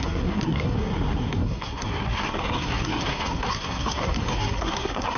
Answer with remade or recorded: remade